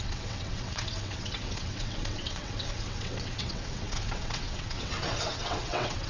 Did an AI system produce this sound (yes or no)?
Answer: yes